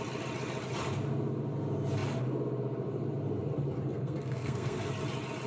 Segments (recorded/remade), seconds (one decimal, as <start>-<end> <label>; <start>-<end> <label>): 0.0-3.9 recorded; 3.9-4.9 remade; 4.9-5.5 recorded